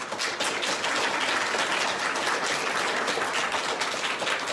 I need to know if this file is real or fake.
real